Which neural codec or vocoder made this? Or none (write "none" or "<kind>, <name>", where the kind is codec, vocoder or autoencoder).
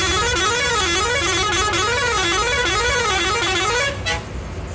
none